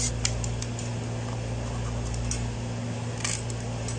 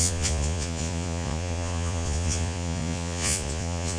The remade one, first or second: second